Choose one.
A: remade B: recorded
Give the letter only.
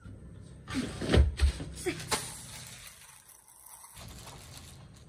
B